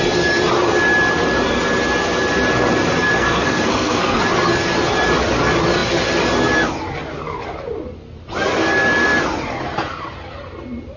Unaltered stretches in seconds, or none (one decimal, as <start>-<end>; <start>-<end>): 0.0-3.1; 4.2-11.0